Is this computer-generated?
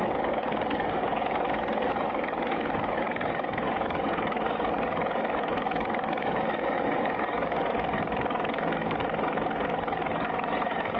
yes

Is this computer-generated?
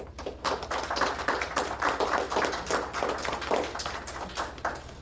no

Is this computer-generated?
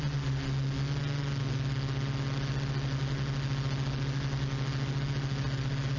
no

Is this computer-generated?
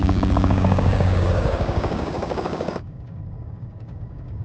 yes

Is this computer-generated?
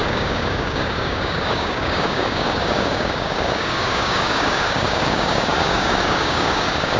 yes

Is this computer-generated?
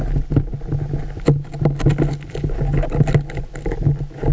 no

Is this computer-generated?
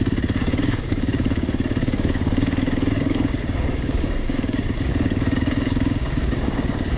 yes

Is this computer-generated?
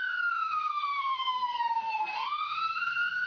yes